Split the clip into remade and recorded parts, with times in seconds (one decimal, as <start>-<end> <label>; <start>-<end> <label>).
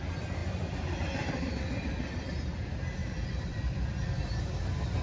0.0-3.0 recorded; 3.0-4.6 remade; 4.6-5.0 recorded